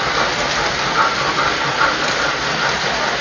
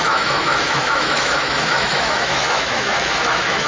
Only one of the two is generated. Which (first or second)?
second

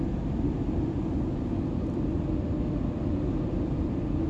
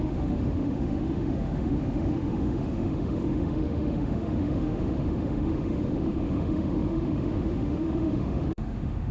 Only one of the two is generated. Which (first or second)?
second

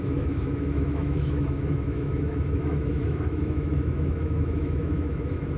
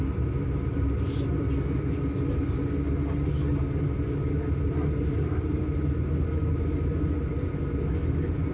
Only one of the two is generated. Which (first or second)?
first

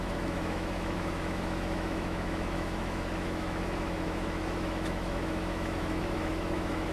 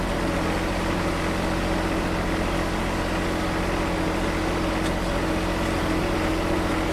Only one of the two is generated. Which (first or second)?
first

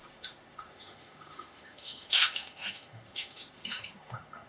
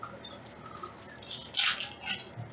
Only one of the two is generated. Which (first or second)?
first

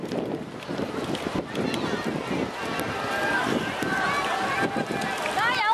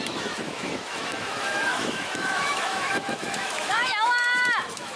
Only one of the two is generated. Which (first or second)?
second